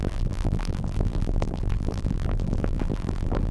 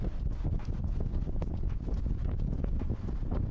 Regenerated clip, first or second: first